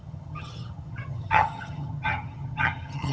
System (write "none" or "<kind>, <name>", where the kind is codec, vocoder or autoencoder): vocoder, HiFi-GAN